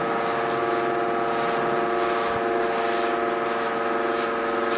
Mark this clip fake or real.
real